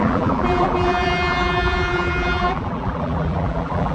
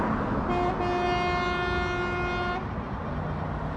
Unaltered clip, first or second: second